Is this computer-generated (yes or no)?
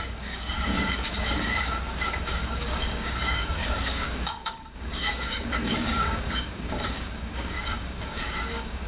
yes